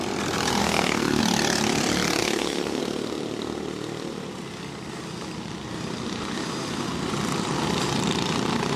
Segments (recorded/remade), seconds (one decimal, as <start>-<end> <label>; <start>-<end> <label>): 0.0-0.6 recorded; 0.6-1.2 remade; 1.2-2.2 recorded; 2.2-2.8 remade; 2.8-8.8 recorded